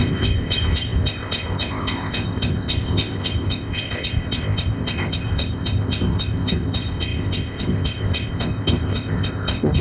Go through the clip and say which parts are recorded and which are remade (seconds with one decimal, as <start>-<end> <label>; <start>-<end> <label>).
0.0-9.8 remade